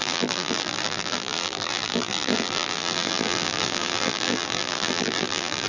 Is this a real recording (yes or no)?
no